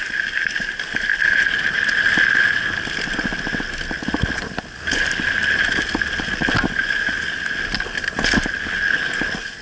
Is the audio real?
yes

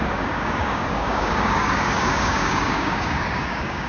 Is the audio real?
no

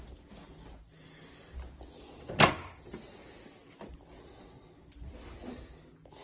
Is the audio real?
yes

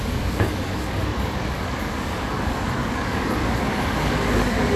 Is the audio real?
no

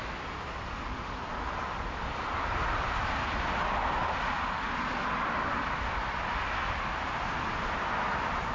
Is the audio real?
yes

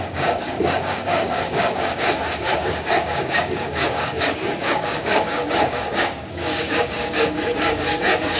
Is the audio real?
no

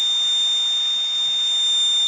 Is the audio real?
yes